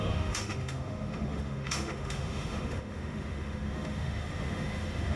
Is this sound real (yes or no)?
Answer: no